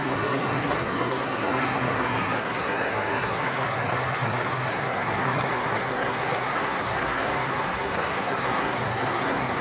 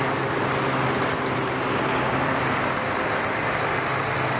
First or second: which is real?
second